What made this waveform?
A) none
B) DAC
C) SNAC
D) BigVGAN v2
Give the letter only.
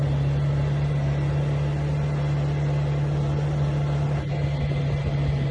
A